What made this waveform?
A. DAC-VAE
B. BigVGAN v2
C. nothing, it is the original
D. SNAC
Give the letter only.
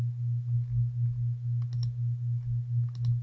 C